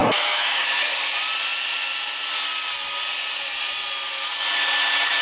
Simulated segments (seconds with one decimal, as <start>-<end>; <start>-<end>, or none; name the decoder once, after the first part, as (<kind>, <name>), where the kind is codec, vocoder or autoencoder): 0.0-0.8 (autoencoder, DAC-VAE)

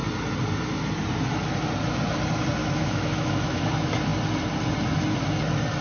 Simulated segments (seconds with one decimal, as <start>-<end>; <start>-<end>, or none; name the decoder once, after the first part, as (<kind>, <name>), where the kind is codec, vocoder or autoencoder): 2.6-3.6 (autoencoder, DAC-VAE)

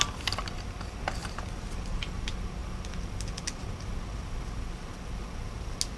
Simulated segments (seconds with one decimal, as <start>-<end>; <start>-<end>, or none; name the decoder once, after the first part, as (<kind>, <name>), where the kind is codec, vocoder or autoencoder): none

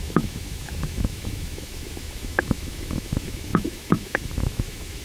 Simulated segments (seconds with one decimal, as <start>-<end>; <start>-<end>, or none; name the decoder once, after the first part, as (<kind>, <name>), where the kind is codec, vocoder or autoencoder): 0.0-5.0 (autoencoder, DAC-VAE)

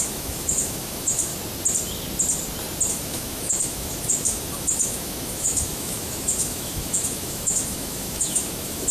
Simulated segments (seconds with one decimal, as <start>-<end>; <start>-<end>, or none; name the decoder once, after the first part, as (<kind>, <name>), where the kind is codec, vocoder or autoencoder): 0.0-1.3 (autoencoder, DAC-VAE); 2.9-8.9